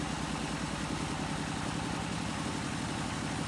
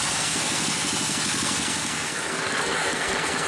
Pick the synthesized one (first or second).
second